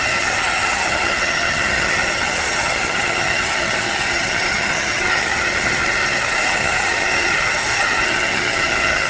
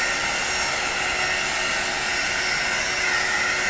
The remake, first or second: first